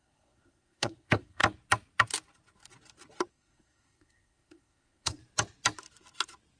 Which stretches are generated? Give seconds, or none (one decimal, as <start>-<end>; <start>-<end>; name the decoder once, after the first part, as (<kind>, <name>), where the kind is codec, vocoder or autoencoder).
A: 0.0-1.4 (codec, SNAC); 3.3-5.2

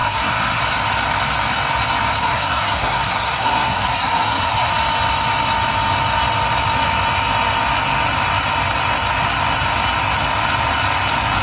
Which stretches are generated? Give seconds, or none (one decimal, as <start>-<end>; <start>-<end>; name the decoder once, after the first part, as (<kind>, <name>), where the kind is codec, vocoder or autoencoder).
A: 0.0-0.6 (codec, SNAC); 2.2-4.7